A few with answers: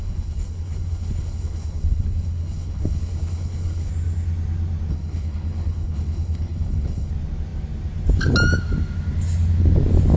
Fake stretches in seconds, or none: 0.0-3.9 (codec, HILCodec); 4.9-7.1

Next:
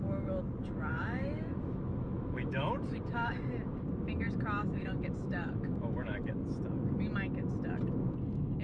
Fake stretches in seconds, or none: 0.9-3.3 (autoencoder, DAC-VAE); 4.6-6.3

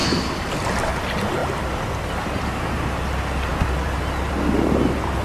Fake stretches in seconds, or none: 0.0-0.9 (vocoder, BigVGAN v2); 1.4-2.1